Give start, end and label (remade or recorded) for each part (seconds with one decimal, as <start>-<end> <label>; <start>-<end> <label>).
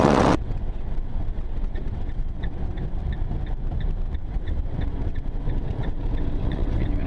0.0-3.0 remade; 3.0-4.2 recorded; 4.2-7.1 remade